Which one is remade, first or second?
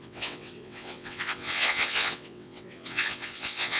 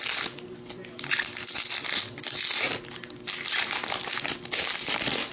first